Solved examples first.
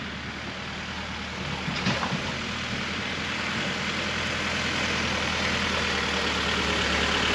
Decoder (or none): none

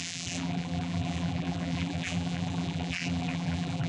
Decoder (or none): vocoder, BigVGAN v2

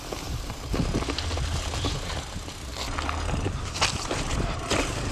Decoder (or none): none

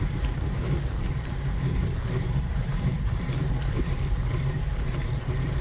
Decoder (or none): vocoder, BigVGAN v2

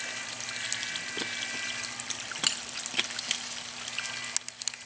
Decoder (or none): none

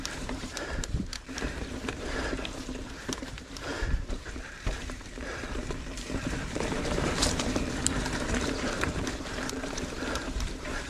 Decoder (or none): vocoder, BigVGAN v2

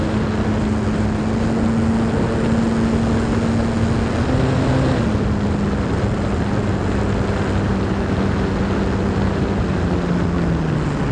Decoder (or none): none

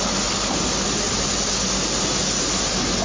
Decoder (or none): none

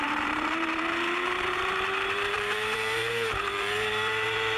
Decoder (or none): vocoder, BigVGAN v2